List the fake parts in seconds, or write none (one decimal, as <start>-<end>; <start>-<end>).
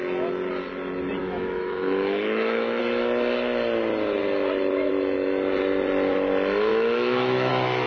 1.2-2.8; 6.7-7.5